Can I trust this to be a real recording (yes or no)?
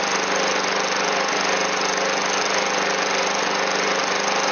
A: yes